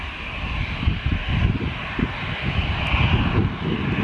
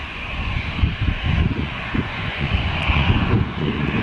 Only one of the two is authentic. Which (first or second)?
first